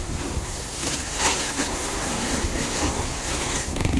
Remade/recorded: remade